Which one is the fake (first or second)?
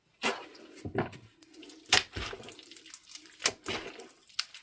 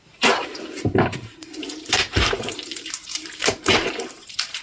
second